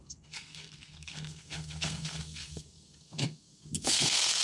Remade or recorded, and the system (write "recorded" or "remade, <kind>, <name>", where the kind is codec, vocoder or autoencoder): remade, codec, SNAC